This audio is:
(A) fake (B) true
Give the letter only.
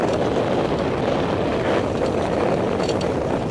B